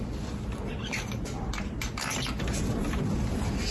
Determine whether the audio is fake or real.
real